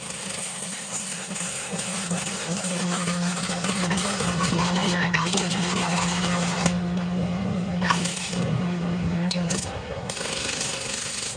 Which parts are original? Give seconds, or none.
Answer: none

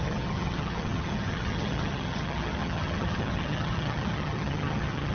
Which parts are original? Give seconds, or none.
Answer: none

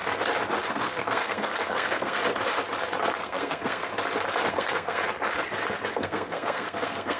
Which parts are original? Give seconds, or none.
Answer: 0.0-0.7; 2.2-3.2; 3.9-4.5; 5.0-5.9